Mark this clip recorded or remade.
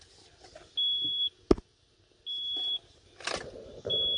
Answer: recorded